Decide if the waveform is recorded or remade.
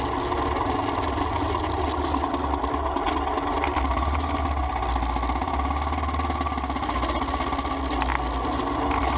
recorded